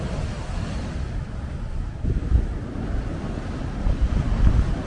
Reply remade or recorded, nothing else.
recorded